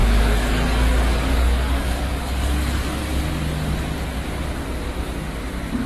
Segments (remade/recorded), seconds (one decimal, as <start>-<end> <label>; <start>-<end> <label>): 0.0-3.0 remade; 3.0-5.9 recorded